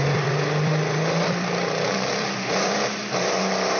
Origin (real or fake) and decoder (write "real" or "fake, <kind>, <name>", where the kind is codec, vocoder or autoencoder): fake, vocoder, BigVGAN v2